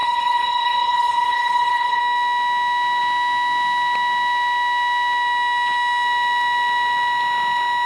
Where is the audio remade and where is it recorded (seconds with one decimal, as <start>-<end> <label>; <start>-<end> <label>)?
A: 0.0-2.0 remade; 2.0-7.9 recorded